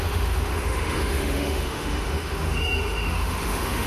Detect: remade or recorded remade